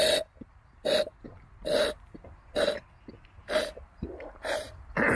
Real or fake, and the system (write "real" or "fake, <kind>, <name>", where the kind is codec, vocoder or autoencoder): real